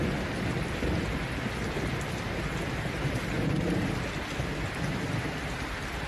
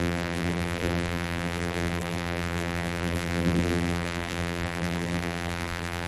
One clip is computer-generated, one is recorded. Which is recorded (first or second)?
first